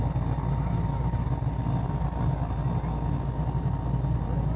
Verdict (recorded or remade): recorded